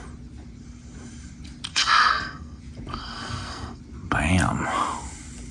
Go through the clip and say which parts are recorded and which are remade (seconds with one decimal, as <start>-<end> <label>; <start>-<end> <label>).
0.0-1.7 recorded; 1.7-2.6 remade; 2.6-3.0 recorded; 3.0-3.8 remade; 3.8-5.5 recorded